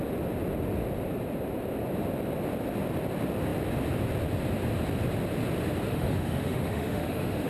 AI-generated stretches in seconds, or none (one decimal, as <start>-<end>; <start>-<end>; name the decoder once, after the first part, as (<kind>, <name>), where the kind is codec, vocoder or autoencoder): 5.9-7.5 (autoencoder, DAC-VAE)